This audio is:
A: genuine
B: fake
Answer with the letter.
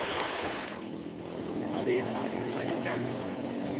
B